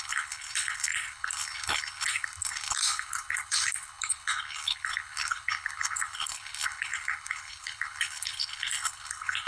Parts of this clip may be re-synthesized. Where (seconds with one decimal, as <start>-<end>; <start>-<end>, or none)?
0.0-9.5